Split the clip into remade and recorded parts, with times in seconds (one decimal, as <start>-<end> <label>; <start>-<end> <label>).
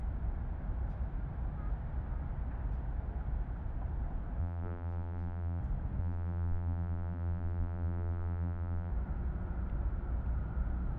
0.0-4.4 recorded; 4.4-5.6 remade; 5.6-6.0 recorded; 6.0-8.9 remade; 8.9-11.0 recorded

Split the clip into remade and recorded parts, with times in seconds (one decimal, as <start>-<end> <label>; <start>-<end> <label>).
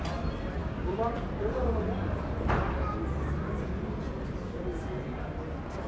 0.0-5.9 recorded